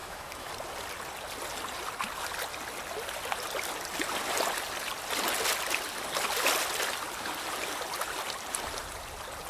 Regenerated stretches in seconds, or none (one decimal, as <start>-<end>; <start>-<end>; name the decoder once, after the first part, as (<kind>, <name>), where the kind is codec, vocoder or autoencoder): 0.0-0.5 (autoencoder, DAC-VAE)